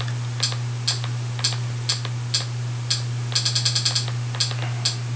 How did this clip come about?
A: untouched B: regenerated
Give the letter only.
A